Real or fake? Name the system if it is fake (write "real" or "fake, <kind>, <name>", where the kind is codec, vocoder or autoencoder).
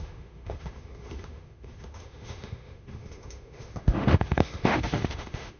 fake, autoencoder, DAC-VAE